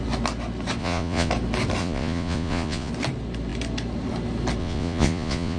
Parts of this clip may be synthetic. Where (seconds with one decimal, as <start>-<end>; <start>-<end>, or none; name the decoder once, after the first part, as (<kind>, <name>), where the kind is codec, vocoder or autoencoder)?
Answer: 0.8-1.3 (vocoder, Vocos); 1.8-2.9; 4.6-5.6